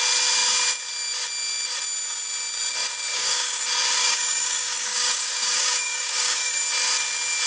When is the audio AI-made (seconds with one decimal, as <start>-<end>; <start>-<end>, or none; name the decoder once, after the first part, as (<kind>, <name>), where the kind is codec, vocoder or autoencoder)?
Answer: 3.1-3.6 (codec, DAC); 4.0-6.6